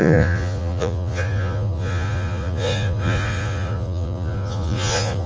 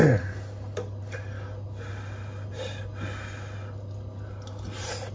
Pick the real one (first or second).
second